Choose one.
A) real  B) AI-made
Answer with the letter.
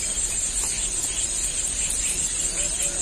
A